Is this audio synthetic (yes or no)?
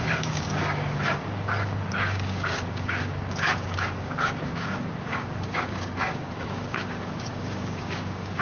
yes